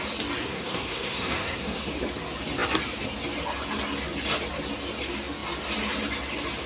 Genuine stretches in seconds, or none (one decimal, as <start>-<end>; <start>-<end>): 0.0-0.4; 1.8-6.7